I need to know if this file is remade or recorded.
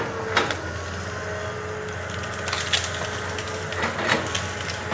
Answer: recorded